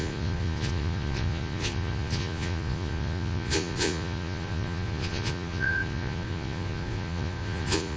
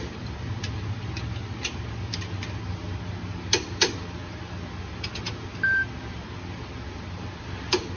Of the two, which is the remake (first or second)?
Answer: first